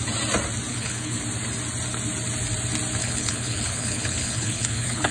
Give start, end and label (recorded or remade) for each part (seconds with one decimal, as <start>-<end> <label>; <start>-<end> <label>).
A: 0.0-0.7 recorded; 0.7-1.2 remade; 1.2-3.0 recorded; 3.0-5.1 remade